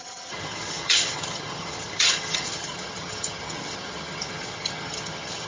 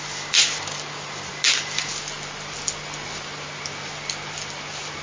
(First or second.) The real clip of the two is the second